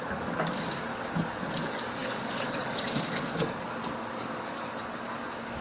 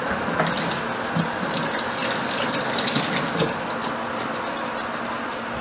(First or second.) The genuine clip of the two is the second